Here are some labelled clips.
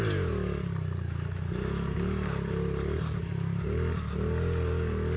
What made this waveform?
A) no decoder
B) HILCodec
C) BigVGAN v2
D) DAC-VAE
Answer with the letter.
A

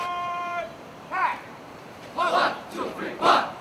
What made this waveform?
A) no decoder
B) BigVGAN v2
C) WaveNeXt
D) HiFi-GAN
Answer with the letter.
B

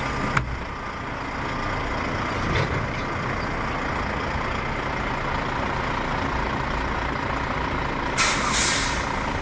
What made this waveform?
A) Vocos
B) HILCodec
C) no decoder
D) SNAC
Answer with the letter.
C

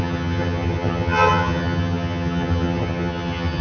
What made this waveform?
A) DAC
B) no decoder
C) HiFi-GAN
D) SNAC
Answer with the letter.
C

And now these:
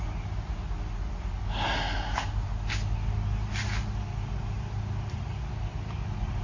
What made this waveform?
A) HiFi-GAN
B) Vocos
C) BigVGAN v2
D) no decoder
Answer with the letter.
D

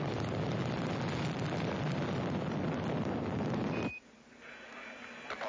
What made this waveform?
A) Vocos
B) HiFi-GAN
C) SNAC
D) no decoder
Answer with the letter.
D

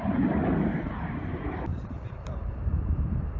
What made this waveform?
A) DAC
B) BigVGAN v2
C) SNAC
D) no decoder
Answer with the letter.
B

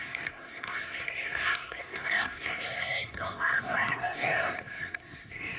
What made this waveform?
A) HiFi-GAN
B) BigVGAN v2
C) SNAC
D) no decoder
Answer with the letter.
C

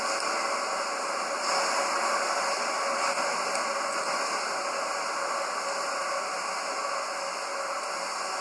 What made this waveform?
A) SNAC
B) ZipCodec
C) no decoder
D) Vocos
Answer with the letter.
C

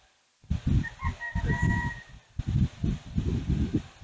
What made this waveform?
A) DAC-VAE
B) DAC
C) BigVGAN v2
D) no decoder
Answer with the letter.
D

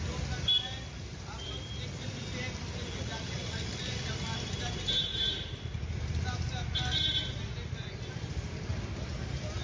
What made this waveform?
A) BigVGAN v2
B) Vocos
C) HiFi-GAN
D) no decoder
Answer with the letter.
D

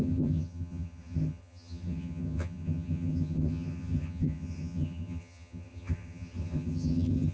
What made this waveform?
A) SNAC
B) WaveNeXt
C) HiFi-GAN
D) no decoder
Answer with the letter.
C